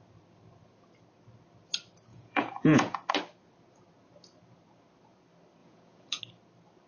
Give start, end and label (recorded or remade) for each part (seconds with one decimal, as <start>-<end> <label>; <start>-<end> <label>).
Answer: 0.0-2.1 recorded; 2.1-3.1 remade; 3.1-5.6 recorded; 5.6-6.2 remade; 6.2-6.9 recorded